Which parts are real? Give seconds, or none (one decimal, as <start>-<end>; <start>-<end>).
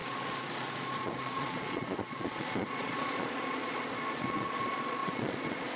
none